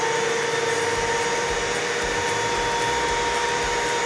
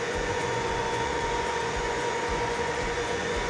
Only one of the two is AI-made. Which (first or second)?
second